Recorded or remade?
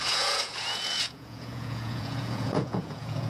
remade